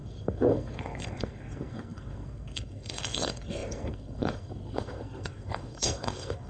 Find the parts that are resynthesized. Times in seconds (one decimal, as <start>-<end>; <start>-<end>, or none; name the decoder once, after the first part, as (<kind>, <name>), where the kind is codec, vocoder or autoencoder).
0.0-6.5 (codec, SNAC)

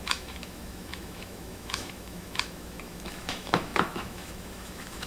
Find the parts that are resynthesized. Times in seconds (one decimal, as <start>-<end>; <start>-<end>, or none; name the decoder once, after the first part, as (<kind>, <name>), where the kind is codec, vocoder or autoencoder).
0.0-5.1 (autoencoder, DAC-VAE)